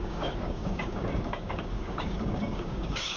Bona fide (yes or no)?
no